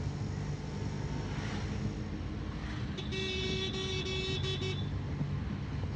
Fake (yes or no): no